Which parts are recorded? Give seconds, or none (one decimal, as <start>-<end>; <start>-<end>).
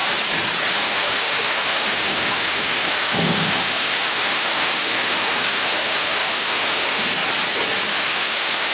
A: 0.0-0.7; 7.1-7.9